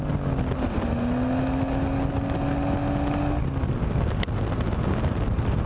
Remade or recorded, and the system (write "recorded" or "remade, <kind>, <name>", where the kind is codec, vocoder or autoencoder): recorded